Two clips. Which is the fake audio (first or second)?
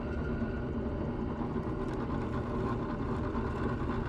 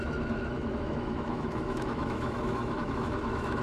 second